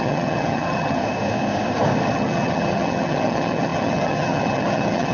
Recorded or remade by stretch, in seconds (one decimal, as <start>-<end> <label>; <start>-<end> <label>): 0.0-1.0 remade; 1.0-2.1 recorded; 2.1-5.1 remade